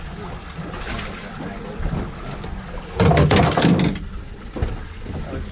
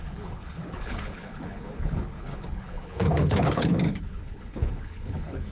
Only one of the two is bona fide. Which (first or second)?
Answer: first